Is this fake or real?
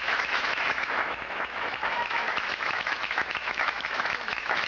fake